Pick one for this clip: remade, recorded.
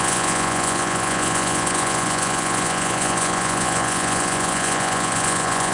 remade